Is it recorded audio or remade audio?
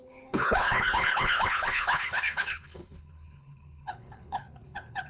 remade